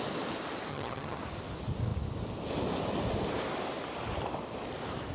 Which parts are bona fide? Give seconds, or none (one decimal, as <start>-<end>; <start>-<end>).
0.0-0.7; 1.2-5.1